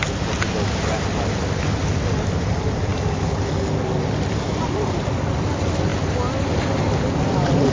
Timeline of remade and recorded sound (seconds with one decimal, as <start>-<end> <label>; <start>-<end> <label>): 0.0-7.7 recorded